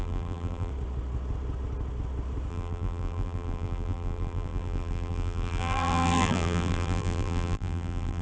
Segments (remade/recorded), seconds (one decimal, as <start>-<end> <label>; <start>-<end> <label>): 0.0-0.7 remade; 0.7-2.5 recorded; 2.5-8.2 remade